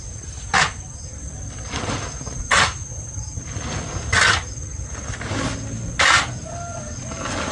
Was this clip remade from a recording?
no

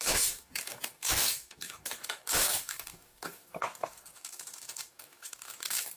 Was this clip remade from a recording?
yes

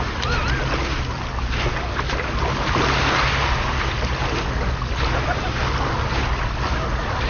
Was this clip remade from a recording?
no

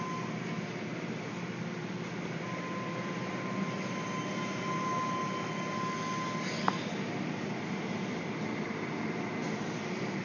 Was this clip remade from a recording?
no